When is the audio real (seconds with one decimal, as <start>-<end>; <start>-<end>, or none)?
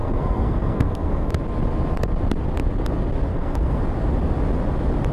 1.3-3.3; 3.8-5.1